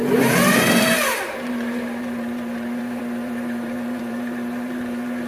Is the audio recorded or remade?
remade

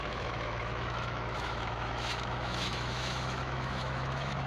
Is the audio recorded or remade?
remade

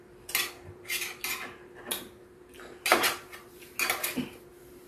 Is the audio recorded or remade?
recorded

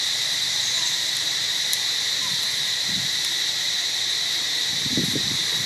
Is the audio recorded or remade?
remade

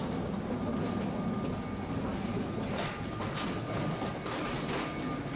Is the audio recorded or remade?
recorded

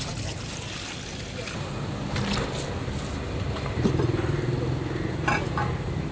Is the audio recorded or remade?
recorded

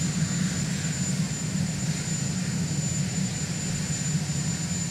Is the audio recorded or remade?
recorded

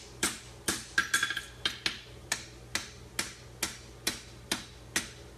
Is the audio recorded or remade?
recorded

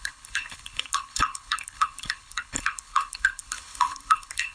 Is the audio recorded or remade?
remade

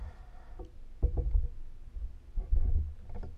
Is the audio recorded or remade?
recorded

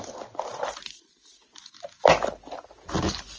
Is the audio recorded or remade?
recorded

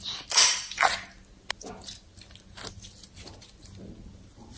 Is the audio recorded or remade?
recorded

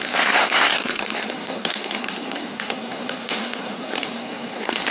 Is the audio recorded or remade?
remade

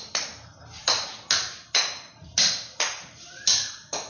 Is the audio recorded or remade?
recorded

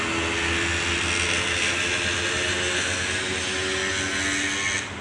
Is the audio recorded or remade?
recorded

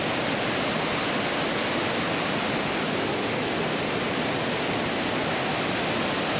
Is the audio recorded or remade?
recorded